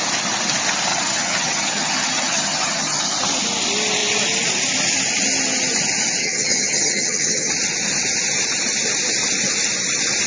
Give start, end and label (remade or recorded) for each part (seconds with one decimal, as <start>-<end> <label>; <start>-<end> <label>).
0.0-0.9 recorded; 0.9-3.1 remade; 3.1-6.2 recorded; 6.2-7.5 remade; 7.5-10.3 recorded